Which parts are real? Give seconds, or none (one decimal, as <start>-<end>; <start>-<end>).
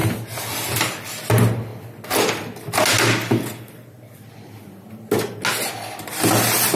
0.0-6.8